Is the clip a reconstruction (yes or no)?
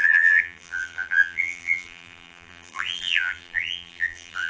yes